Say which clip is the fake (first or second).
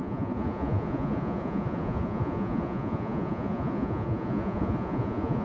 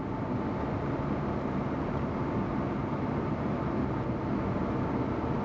first